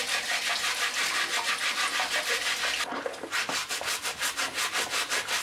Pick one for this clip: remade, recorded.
recorded